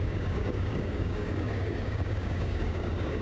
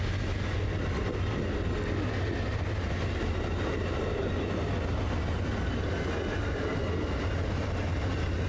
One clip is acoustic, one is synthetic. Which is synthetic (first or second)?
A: first